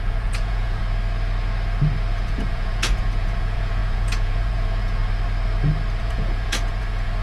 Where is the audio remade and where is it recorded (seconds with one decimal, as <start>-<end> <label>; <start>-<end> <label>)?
0.0-0.8 remade; 0.8-2.1 recorded; 2.1-5.0 remade; 5.0-6.0 recorded; 6.0-7.2 remade